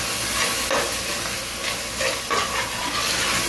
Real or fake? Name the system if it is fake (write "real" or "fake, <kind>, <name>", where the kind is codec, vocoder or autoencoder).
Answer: real